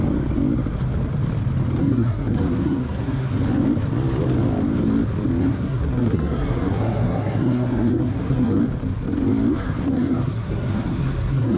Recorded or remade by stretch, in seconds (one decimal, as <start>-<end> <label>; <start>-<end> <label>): 0.0-1.8 recorded; 1.8-3.3 remade; 3.3-5.4 recorded; 5.4-8.6 remade; 8.6-9.8 recorded; 9.8-11.6 remade